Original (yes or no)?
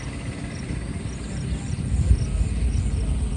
yes